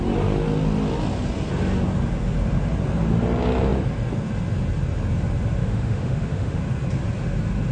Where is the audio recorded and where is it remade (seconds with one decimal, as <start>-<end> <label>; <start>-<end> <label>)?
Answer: 0.0-5.6 recorded; 5.6-6.6 remade; 6.6-7.7 recorded